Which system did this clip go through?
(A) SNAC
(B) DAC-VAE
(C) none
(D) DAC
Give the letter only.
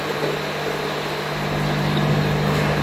C